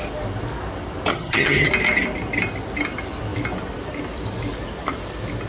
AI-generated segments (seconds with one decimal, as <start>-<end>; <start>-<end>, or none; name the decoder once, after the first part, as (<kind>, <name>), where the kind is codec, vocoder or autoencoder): 1.1-1.7 (vocoder, HiFi-GAN)